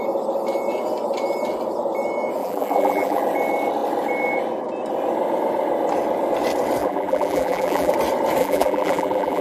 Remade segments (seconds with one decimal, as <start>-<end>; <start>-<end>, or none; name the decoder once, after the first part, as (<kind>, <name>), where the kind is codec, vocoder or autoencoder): 2.4-3.2 (vocoder, BigVGAN v2); 6.8-7.9; 8.4-9.4